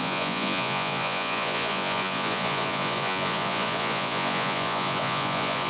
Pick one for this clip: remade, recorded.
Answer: remade